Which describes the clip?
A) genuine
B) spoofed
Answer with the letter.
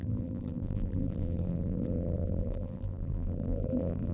B